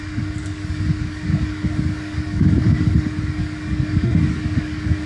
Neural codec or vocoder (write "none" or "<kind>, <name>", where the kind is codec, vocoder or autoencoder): codec, DAC